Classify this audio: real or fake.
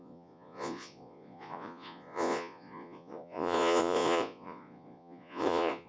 fake